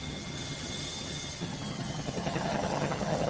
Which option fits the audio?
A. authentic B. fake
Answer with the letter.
B